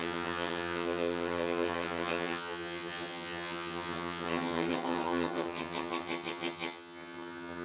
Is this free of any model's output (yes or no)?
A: no